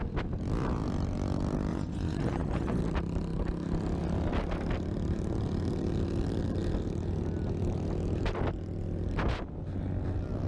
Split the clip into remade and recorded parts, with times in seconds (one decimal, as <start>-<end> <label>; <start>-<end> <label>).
0.0-1.7 recorded; 1.7-2.8 remade; 2.8-10.5 recorded